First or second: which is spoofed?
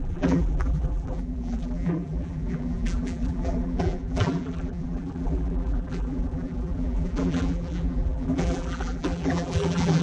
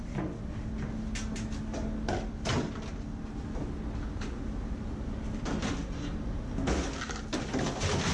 first